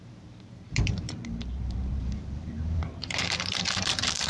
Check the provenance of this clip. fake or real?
fake